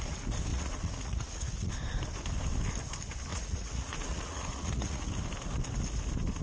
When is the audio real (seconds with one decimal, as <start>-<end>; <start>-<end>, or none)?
0.0-0.5; 1.7-3.3; 5.1-6.4